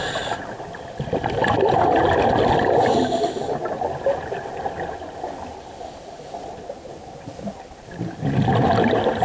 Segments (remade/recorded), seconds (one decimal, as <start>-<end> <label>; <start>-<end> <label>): 0.0-9.2 recorded